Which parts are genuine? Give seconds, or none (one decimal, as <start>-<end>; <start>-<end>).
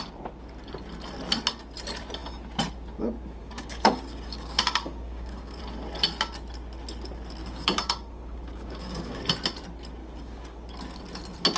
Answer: 0.0-3.4; 5.6-7.4; 9.2-10.0; 10.7-11.6